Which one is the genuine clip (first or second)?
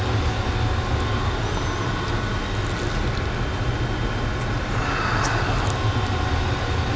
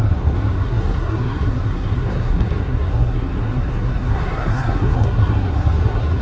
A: first